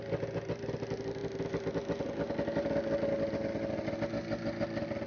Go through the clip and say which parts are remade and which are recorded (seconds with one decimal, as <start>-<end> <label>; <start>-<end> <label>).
0.0-5.1 recorded